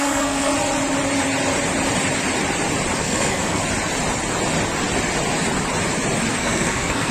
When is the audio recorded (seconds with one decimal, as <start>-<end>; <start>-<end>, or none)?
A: 0.5-3.0; 3.6-6.3

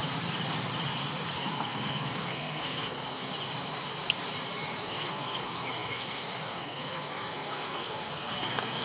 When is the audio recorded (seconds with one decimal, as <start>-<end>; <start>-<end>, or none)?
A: 0.0-1.3; 3.3-4.8